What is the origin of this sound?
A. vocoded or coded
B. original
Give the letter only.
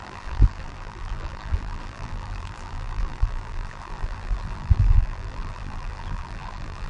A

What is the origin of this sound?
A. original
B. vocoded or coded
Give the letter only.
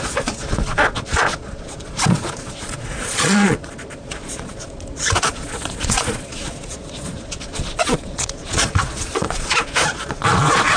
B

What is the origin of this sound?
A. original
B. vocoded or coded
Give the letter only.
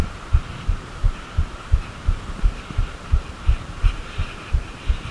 B